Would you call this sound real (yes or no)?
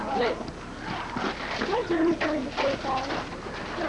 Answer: yes